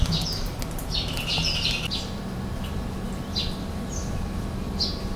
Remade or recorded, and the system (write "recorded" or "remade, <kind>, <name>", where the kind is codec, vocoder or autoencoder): recorded